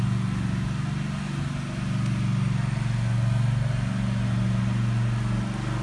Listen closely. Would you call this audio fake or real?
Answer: real